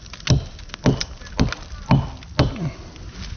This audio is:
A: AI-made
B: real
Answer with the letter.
B